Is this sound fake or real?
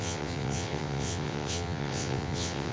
fake